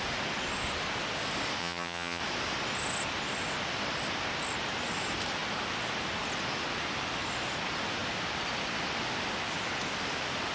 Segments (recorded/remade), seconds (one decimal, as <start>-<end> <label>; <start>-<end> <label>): 0.0-1.6 recorded; 1.6-2.2 remade; 2.2-10.5 recorded